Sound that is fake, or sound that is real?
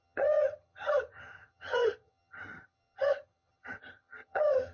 fake